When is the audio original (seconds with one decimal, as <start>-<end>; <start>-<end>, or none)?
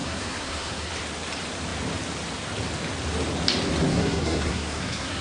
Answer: 0.9-3.9